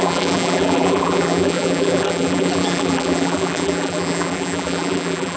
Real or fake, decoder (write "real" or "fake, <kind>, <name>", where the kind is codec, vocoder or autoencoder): fake, vocoder, BigVGAN v2